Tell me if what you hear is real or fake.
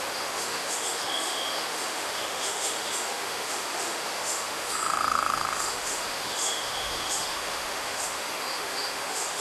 fake